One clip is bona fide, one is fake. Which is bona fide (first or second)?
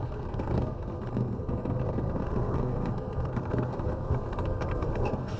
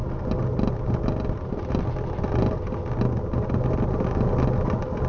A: second